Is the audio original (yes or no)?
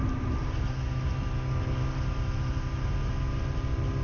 yes